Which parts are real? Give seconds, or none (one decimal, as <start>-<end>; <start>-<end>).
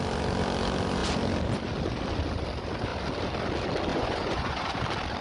0.0-3.9; 4.8-5.2